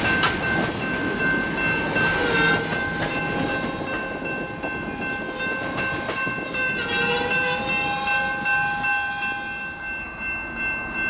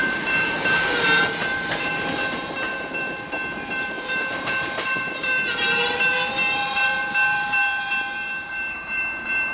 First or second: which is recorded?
first